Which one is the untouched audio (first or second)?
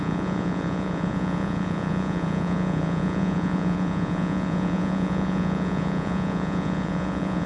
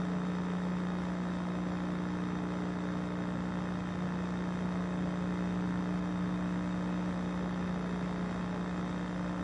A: second